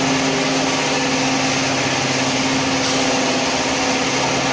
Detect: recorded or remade recorded